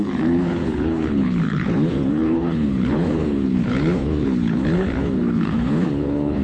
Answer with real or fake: fake